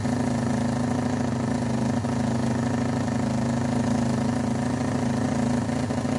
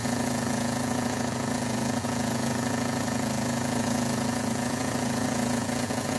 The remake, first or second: second